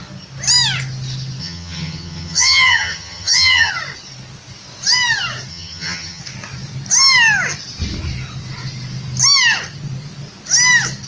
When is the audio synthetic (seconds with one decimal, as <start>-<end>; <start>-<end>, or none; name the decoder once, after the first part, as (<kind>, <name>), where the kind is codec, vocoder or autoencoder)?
1.4-3.7 (vocoder, HiFi-GAN); 5.5-6.2